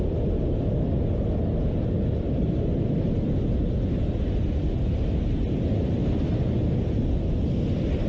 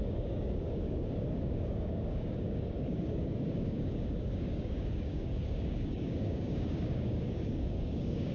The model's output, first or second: second